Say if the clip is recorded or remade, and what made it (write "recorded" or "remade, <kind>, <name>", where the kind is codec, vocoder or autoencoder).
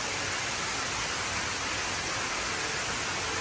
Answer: recorded